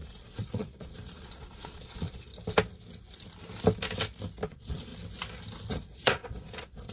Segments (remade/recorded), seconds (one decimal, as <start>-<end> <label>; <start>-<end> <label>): 0.0-2.3 remade; 2.3-4.5 recorded; 4.5-4.9 remade; 4.9-5.7 recorded; 5.7-6.9 remade